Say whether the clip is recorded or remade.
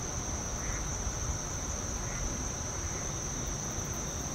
recorded